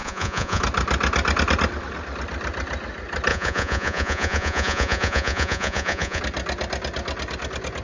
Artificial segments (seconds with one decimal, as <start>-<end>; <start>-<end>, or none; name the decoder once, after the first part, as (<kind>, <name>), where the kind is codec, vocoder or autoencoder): 0.0-0.6 (vocoder, Vocos); 3.3-6.2